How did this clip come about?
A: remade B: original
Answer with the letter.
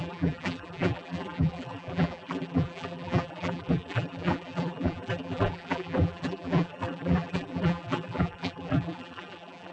A